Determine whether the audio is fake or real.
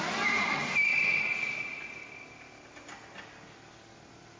real